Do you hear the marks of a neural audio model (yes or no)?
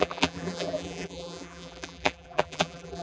yes